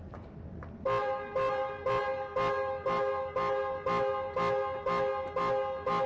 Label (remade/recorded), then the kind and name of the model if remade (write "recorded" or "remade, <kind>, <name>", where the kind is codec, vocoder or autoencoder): recorded